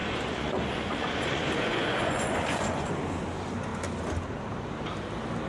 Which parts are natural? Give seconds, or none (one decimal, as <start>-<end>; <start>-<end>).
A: 2.9-5.5